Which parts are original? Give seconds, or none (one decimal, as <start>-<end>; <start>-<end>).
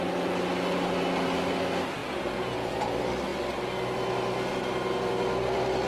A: 0.0-2.0; 2.7-5.9